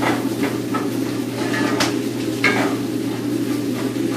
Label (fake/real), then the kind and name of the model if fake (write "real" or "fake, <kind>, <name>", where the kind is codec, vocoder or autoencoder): real